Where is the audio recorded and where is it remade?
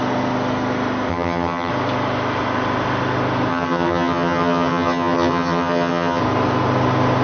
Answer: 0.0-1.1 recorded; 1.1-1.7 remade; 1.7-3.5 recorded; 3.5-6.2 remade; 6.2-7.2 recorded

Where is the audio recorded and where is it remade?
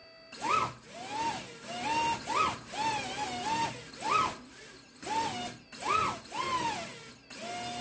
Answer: 0.0-7.8 recorded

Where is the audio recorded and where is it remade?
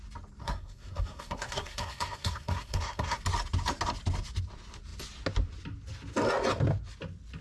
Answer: 0.0-0.4 recorded; 0.4-3.2 remade; 3.2-7.4 recorded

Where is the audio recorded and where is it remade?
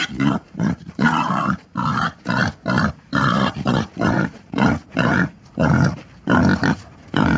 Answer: 0.0-2.4 remade; 2.4-2.9 recorded; 2.9-6.0 remade; 6.0-6.7 recorded; 6.7-7.4 remade